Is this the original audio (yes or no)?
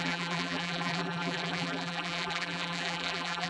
no